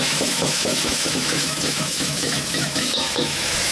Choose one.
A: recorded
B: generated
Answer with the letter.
B